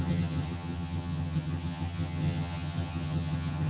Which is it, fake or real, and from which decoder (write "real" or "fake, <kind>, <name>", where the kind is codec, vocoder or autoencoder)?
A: fake, vocoder, HiFi-GAN